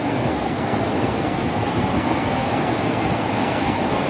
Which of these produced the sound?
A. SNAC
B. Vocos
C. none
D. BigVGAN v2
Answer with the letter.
A